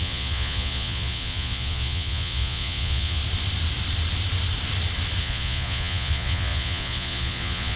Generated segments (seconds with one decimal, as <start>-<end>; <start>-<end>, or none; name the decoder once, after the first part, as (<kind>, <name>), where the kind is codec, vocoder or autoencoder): 0.0-3.2 (vocoder, Vocos); 5.2-7.8